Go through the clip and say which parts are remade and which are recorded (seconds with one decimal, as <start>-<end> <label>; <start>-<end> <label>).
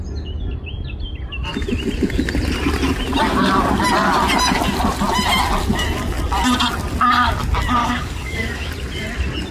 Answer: 0.0-7.8 recorded; 7.8-8.7 remade; 8.7-9.5 recorded